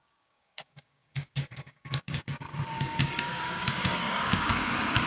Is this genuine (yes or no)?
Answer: no